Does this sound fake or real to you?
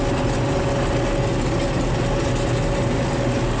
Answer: real